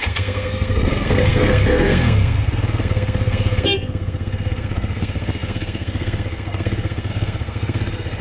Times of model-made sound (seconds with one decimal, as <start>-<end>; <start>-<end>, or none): 0.0-8.2